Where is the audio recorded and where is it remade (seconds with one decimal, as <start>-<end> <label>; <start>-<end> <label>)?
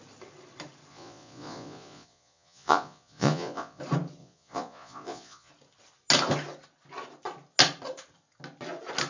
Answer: 0.0-0.9 recorded; 0.9-3.8 remade; 3.8-4.2 recorded; 4.2-5.5 remade; 5.5-9.1 recorded